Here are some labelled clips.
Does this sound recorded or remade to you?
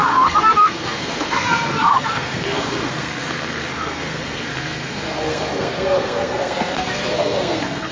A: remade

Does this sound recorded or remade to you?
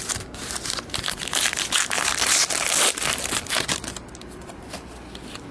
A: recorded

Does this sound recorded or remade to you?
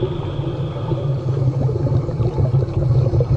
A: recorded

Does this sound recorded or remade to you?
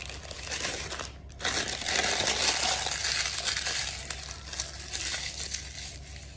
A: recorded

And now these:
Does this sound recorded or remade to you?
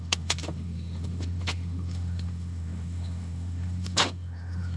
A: remade